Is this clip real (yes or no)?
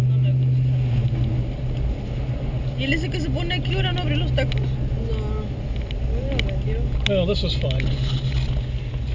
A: yes